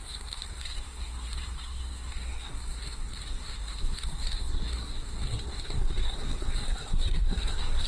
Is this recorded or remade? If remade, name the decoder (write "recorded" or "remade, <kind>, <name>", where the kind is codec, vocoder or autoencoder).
remade, codec, SNAC